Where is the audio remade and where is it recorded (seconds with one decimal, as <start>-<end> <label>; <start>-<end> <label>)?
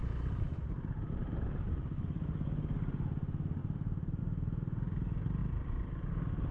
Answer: 0.0-2.5 remade; 2.5-3.6 recorded; 3.6-4.2 remade; 4.2-5.4 recorded; 5.4-6.1 remade; 6.1-6.5 recorded